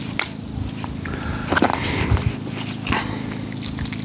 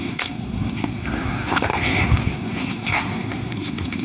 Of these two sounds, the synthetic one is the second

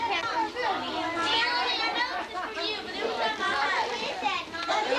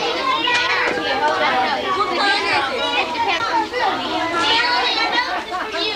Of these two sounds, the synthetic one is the second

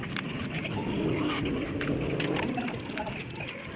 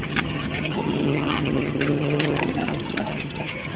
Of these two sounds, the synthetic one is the second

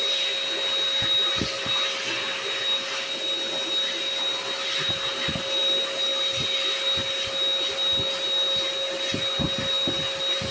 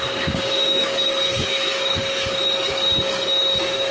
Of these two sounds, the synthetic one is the second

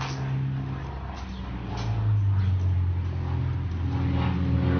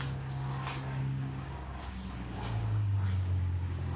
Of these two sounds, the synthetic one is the second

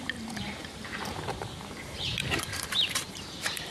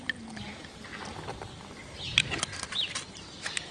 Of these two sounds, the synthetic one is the first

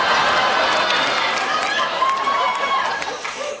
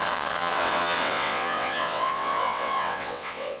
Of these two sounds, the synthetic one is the second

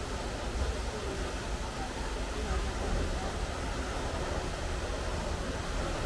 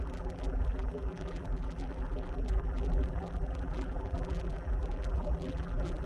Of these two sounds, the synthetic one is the second